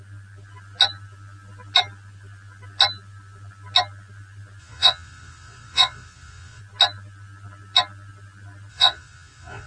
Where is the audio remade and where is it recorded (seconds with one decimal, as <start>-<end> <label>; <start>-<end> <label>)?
0.0-4.6 recorded; 4.6-6.6 remade; 6.6-8.7 recorded; 8.7-9.7 remade